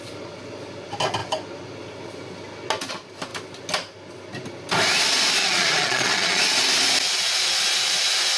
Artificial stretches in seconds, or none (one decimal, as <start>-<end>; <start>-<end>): 5.4-6.4